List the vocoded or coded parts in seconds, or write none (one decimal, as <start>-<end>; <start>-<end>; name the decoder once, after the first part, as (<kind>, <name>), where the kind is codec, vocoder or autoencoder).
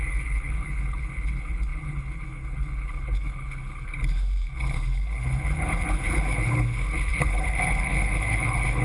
0.0-8.8 (codec, HILCodec)